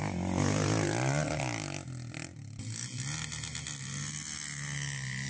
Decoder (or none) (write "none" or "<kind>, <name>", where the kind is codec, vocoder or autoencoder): none